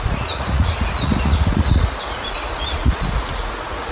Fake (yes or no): yes